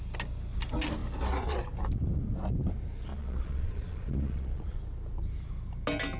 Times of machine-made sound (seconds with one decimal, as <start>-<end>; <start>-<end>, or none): 3.1-4.8